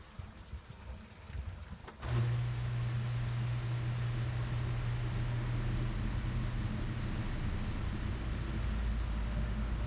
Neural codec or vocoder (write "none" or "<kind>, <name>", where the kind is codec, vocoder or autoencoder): none